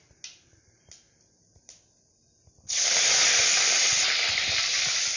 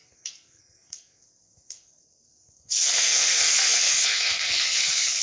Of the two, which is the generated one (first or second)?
second